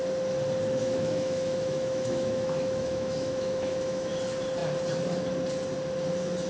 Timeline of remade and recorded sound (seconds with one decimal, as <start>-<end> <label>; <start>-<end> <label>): 0.0-0.8 recorded; 0.8-4.1 remade; 4.1-6.5 recorded